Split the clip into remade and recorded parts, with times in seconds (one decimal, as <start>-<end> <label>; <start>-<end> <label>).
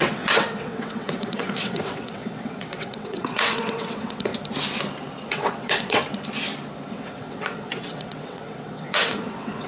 0.0-4.3 remade; 4.3-5.3 recorded; 5.3-6.0 remade; 6.0-6.9 recorded; 6.9-9.7 remade